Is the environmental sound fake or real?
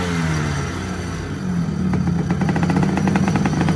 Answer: real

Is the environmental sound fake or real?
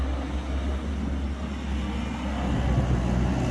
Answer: real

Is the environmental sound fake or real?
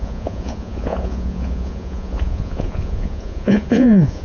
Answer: fake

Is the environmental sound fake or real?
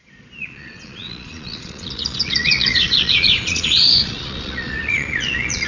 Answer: fake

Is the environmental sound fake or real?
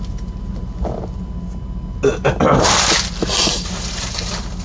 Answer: real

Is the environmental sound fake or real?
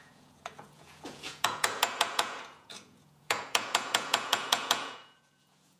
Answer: fake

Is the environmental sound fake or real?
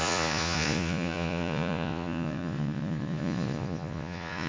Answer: fake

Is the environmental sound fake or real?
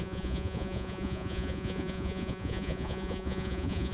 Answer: fake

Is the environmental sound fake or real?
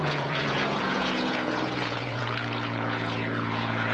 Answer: fake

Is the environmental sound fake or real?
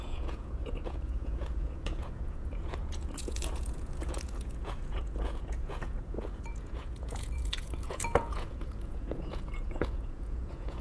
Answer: fake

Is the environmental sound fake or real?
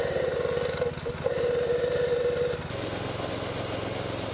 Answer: real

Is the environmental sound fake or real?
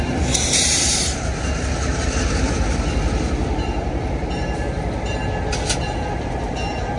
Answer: real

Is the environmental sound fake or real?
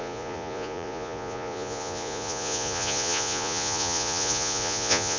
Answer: fake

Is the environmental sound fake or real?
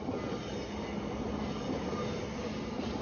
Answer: real